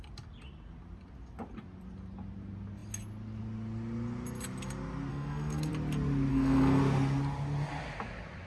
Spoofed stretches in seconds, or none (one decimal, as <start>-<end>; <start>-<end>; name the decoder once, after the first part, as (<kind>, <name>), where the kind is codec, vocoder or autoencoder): 5.1-5.7 (codec, SNAC); 6.3-6.8